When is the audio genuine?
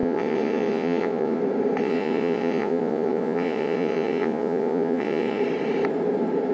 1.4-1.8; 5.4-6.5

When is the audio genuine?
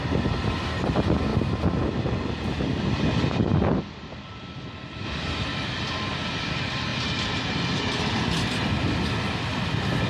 0.0-6.9; 7.8-10.1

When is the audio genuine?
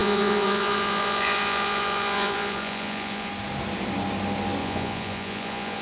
3.3-4.6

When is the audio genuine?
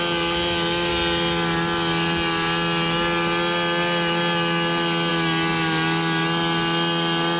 0.0-7.4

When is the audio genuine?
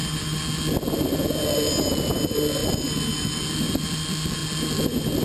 0.0-5.2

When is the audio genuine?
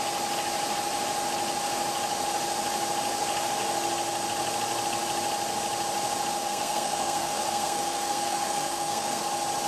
0.0-6.4; 9.2-9.7